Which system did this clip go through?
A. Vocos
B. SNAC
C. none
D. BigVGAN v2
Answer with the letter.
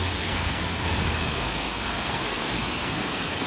B